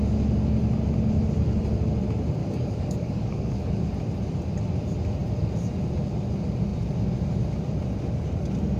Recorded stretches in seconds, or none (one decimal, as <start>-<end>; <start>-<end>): 0.0-2.4; 3.9-8.8